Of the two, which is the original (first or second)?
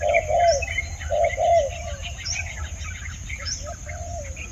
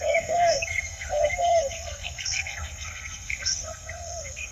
first